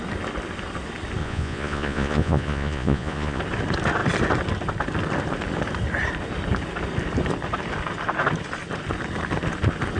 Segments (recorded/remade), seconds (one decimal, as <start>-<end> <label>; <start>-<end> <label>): 0.0-1.2 recorded; 1.2-3.4 remade; 3.4-10.0 recorded